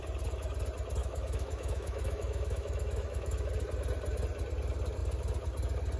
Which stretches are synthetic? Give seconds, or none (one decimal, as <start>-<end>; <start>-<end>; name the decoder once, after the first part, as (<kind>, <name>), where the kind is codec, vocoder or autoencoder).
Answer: 1.0-3.5 (autoencoder, DAC-VAE)